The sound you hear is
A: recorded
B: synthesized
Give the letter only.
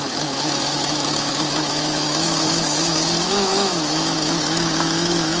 B